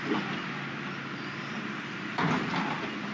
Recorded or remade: recorded